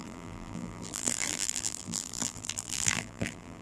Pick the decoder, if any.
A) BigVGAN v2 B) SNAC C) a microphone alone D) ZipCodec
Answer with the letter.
A